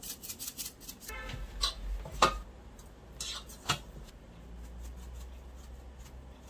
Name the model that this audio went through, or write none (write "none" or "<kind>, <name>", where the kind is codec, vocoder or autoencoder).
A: none